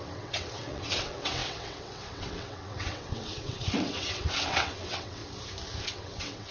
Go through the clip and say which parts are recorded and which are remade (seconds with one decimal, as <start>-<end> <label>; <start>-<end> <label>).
0.0-5.2 remade; 5.2-5.8 recorded; 5.8-6.5 remade